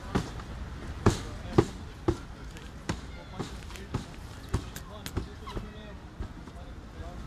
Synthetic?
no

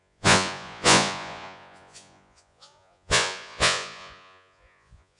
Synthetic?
yes